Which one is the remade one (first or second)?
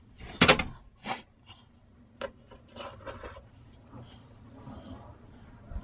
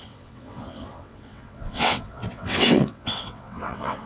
second